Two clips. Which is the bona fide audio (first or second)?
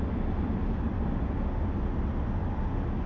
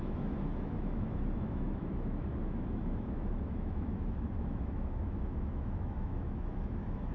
first